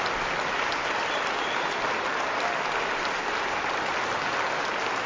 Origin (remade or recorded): recorded